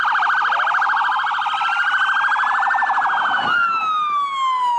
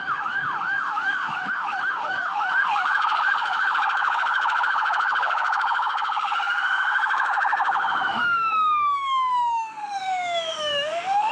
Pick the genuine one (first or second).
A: first